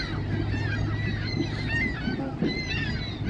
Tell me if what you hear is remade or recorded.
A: recorded